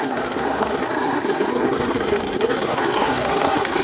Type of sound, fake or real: fake